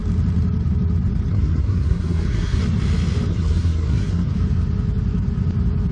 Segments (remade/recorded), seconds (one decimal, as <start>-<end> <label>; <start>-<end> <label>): 0.0-1.3 recorded; 1.3-2.6 remade; 2.6-3.3 recorded; 3.3-4.3 remade; 4.3-5.9 recorded